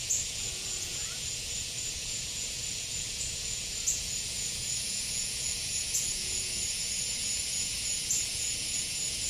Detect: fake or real fake